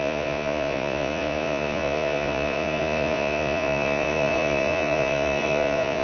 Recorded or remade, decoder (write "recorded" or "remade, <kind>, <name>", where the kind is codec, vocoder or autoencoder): remade, vocoder, Vocos